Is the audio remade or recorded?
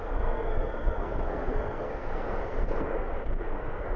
remade